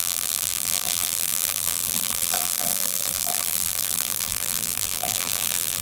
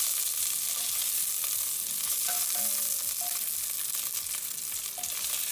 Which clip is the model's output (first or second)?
first